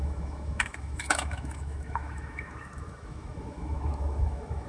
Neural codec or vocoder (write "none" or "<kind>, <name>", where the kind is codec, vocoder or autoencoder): autoencoder, DAC-VAE